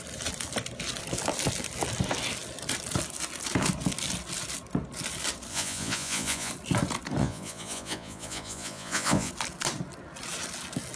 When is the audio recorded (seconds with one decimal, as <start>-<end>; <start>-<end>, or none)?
0.0-5.5; 6.5-7.2; 9.3-11.0